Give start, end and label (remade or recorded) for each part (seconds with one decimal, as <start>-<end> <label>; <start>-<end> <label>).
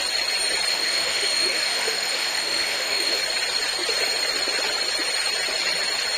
0.0-0.7 recorded; 0.7-3.2 remade; 3.2-6.2 recorded